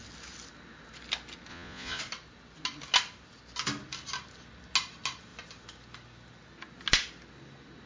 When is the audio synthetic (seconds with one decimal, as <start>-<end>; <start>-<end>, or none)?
1.5-2.0

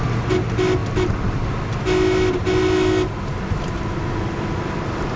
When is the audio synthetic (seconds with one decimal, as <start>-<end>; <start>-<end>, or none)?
none